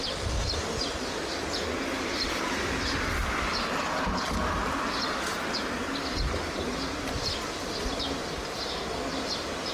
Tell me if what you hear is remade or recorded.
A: recorded